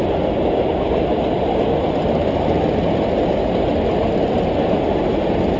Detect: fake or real real